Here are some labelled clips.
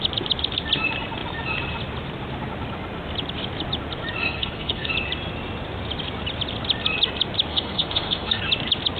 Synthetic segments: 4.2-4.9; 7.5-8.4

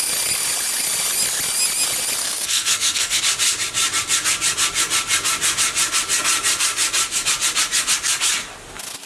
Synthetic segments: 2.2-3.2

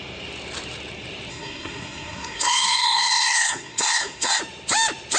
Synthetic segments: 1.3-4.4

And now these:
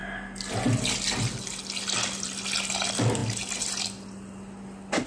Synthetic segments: none

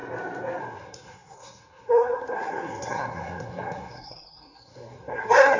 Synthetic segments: 0.6-5.6

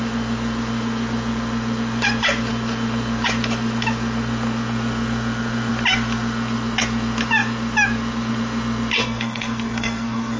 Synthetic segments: 9.0-10.4